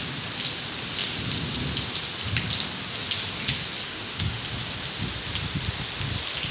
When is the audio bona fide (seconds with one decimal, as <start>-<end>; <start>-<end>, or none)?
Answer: 0.0-3.9; 4.4-6.5